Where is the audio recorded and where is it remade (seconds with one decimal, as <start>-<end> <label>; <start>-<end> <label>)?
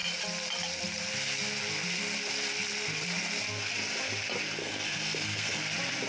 0.0-4.6 recorded; 4.6-5.6 remade; 5.6-6.1 recorded